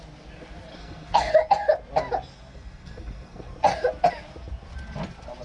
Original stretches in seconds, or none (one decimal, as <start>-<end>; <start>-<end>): 0.0-0.7; 1.3-2.5; 3.5-5.4